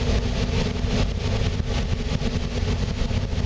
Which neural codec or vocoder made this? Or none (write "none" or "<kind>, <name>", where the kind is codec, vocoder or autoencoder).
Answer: none